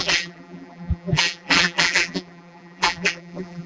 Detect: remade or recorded remade